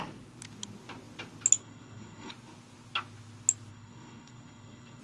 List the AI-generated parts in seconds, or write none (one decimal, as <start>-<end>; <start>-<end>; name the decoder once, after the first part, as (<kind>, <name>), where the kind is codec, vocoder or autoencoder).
1.6-2.3 (codec, SNAC); 3.7-5.0